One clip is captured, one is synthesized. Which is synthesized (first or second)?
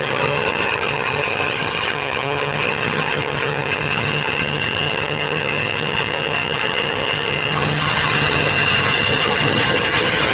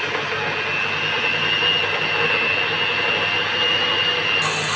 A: first